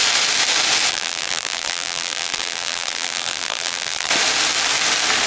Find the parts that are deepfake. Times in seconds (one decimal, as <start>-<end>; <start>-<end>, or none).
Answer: 0.9-4.1